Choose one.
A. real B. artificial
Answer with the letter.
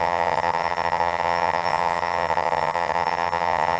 B